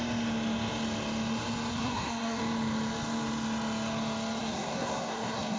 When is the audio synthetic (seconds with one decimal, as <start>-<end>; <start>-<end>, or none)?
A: 1.7-2.4; 4.4-5.6